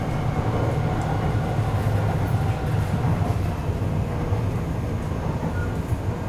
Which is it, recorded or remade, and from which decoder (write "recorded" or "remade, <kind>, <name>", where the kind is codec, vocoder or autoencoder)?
recorded